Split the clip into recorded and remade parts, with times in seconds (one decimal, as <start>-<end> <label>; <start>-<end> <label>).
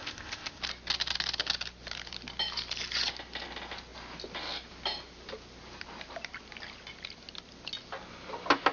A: 0.0-0.6 remade; 0.6-8.7 recorded